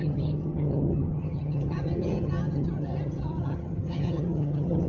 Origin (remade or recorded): remade